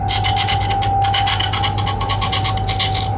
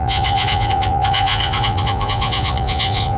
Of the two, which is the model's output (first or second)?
second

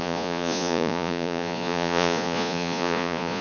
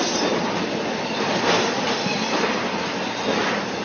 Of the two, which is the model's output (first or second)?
first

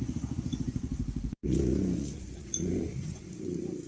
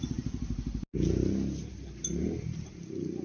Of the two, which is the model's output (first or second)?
first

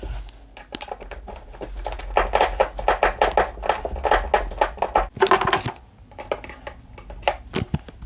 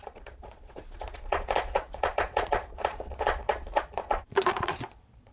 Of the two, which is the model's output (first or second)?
second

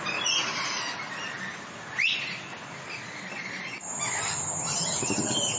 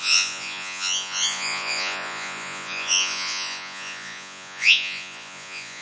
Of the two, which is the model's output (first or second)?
second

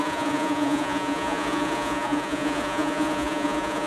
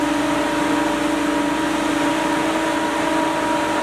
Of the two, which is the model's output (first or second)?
first